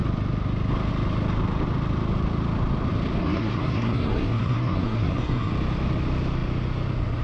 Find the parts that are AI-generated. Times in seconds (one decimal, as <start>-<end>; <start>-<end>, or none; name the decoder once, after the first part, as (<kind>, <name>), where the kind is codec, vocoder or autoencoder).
3.2-5.5 (codec, SNAC)